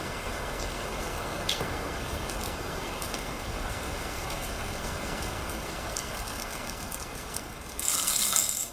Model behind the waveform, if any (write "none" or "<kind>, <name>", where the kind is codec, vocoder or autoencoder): codec, SNAC